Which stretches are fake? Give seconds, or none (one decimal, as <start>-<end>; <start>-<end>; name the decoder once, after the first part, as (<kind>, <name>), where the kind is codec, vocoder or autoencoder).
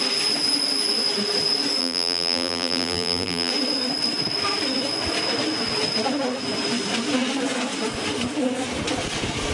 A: 1.8-3.5 (vocoder, BigVGAN v2)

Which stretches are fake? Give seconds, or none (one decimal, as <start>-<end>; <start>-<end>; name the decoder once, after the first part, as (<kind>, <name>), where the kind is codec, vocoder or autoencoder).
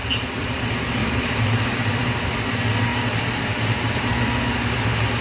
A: 0.0-0.6 (vocoder, BigVGAN v2); 1.0-2.2; 2.9-4.1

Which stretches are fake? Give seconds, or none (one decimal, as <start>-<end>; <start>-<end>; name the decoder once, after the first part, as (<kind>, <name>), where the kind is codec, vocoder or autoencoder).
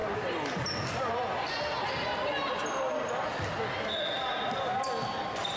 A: none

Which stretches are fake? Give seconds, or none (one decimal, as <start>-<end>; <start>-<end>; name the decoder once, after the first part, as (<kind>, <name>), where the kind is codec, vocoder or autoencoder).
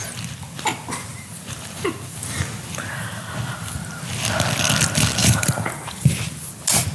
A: 1.1-2.4 (vocoder, BigVGAN v2); 5.2-6.2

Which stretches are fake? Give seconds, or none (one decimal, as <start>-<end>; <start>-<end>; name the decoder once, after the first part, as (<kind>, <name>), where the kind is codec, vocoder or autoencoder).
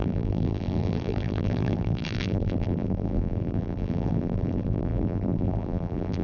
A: 0.0-6.2 (vocoder, BigVGAN v2)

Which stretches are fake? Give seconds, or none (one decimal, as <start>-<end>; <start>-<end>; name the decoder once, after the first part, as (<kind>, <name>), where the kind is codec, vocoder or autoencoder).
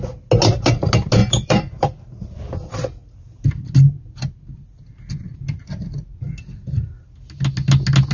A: 1.2-2.5 (vocoder, BigVGAN v2)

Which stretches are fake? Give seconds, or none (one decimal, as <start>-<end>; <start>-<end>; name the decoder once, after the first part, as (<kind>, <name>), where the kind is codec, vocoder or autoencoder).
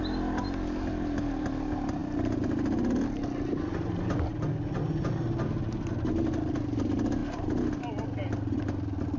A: none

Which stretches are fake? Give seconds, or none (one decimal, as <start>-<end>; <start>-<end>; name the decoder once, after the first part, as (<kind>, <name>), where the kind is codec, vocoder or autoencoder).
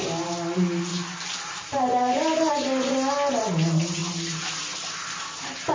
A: 0.9-2.5 (vocoder, BigVGAN v2)